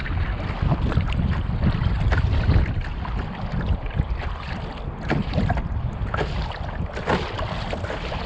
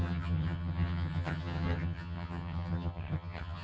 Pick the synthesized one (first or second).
second